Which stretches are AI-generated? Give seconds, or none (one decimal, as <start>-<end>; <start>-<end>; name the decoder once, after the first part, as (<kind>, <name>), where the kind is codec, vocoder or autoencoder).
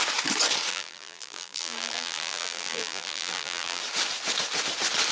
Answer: 0.7-3.8 (vocoder, BigVGAN v2)